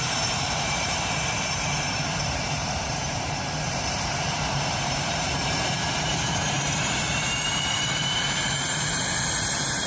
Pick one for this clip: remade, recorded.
remade